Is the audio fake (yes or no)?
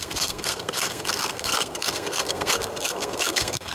yes